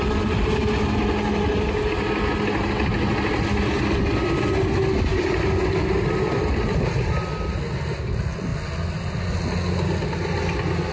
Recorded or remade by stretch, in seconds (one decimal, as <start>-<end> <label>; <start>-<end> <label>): 0.0-10.9 recorded